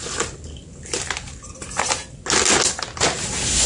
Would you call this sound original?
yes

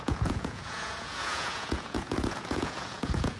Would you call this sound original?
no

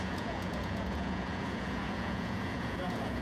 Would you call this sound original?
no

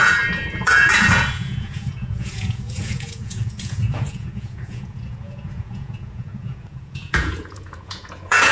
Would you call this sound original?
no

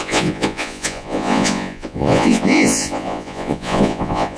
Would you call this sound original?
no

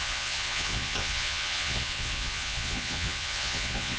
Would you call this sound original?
no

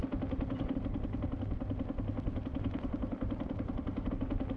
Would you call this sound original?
yes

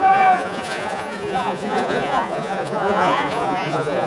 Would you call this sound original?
no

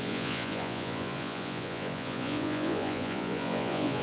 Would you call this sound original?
no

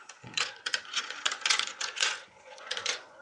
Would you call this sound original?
no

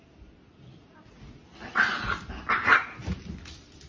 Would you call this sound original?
yes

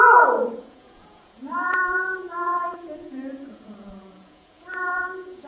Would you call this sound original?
no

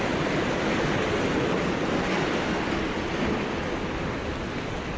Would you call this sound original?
yes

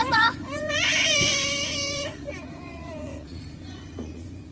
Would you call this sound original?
no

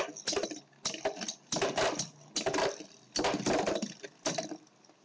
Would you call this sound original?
yes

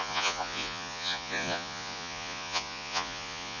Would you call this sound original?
no